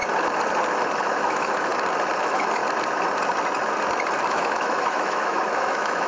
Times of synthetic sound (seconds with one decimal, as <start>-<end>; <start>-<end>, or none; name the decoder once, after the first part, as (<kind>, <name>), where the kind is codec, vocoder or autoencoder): 1.0-1.7 (autoencoder, DAC-VAE); 2.2-2.6; 4.3-6.1